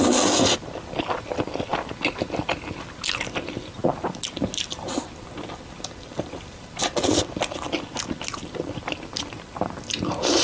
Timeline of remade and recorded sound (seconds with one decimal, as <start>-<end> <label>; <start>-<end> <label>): 0.0-10.4 recorded